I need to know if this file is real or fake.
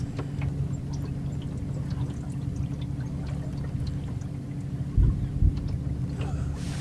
real